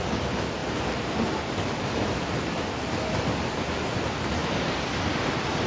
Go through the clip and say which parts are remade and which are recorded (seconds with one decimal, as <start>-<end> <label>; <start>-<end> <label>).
0.0-0.6 recorded; 0.6-4.0 remade; 4.0-5.7 recorded